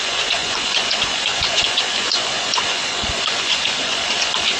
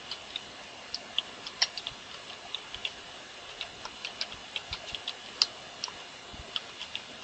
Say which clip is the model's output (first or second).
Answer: first